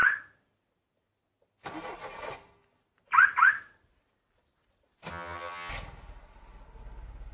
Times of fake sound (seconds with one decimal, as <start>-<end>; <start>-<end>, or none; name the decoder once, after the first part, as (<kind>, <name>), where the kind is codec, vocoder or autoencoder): 5.1-5.7 (vocoder, HiFi-GAN)